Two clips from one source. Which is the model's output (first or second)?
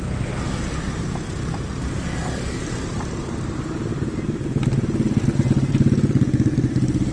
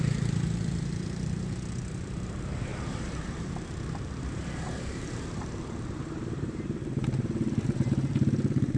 second